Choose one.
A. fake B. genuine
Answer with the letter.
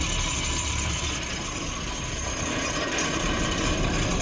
A